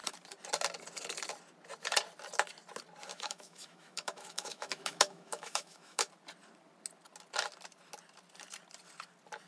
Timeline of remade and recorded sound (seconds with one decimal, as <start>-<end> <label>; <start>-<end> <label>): 0.0-3.1 recorded; 3.1-6.1 remade; 6.1-9.5 recorded